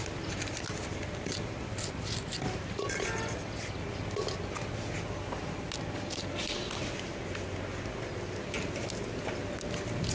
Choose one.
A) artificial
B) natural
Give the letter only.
B